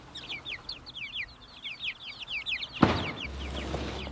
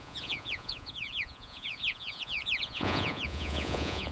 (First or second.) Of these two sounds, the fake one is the second